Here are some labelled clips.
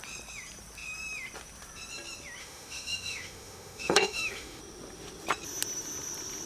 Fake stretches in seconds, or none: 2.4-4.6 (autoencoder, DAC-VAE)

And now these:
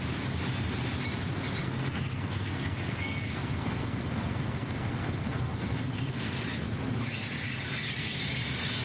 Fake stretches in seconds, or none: 1.6-6.3 (codec, SNAC)